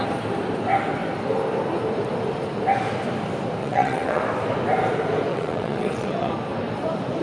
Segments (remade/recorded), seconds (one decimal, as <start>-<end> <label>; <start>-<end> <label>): 0.0-3.6 recorded; 3.6-4.2 remade; 4.2-5.3 recorded; 5.3-6.3 remade; 6.3-7.2 recorded

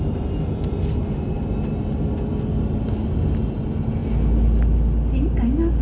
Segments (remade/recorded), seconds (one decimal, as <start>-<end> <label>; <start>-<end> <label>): 0.0-5.8 recorded

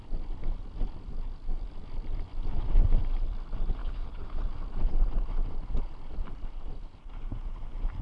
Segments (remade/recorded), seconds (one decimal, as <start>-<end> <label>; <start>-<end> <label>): 0.0-3.8 recorded; 3.8-4.4 remade; 4.4-8.0 recorded

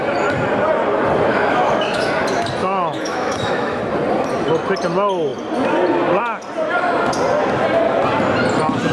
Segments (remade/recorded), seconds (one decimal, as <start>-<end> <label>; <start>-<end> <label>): 0.0-1.3 recorded; 1.3-2.0 remade; 2.0-2.6 recorded; 2.6-3.8 remade; 3.8-8.9 recorded

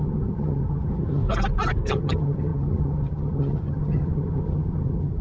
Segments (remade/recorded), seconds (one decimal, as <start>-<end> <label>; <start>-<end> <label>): 0.0-1.2 remade; 1.2-1.9 recorded; 1.9-5.2 remade

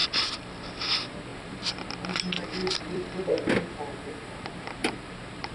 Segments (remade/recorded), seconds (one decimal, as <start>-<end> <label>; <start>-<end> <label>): 0.0-0.6 remade; 0.6-1.3 recorded; 1.3-1.9 remade; 1.9-2.6 recorded; 2.6-3.2 remade; 3.2-4.8 recorded; 4.8-5.5 remade

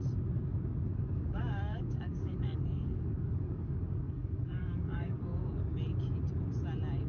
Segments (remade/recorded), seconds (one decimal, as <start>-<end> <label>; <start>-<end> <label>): 0.0-0.9 recorded; 0.9-5.2 remade; 5.2-7.1 recorded

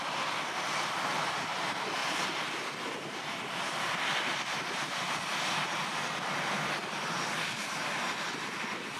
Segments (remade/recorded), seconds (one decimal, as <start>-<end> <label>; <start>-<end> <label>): 0.0-9.0 recorded